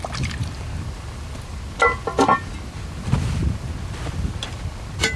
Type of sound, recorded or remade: recorded